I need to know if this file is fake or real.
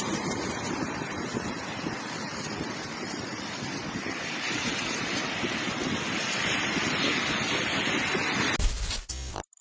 real